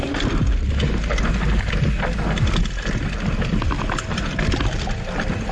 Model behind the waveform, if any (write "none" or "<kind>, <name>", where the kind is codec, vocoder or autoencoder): none